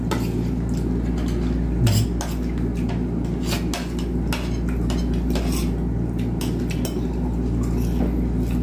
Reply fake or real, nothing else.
real